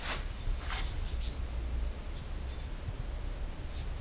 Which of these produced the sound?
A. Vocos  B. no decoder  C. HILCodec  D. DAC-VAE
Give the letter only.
B